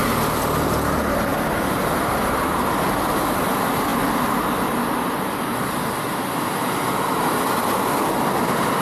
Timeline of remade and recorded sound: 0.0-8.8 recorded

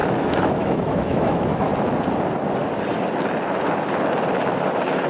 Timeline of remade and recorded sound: 0.0-1.7 remade; 1.7-5.1 recorded

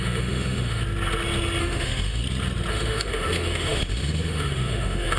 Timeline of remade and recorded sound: 0.0-0.8 remade; 0.8-1.6 recorded; 1.6-2.2 remade; 2.2-2.7 recorded; 2.7-5.2 remade

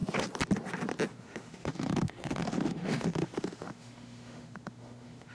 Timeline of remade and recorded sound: 0.0-1.1 recorded; 1.1-5.3 remade

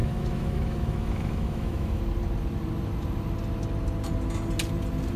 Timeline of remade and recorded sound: 0.0-2.0 remade; 2.0-5.2 recorded

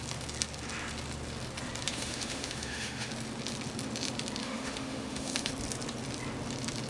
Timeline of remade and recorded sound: 0.0-1.9 recorded; 1.9-3.1 remade; 3.1-4.4 recorded; 4.4-5.5 remade; 5.5-6.9 recorded